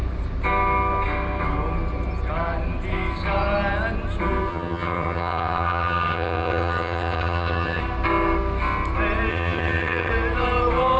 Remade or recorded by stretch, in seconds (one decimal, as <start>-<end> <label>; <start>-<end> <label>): 0.0-4.5 recorded; 4.5-7.8 remade; 7.8-9.3 recorded; 9.3-10.1 remade; 10.1-11.0 recorded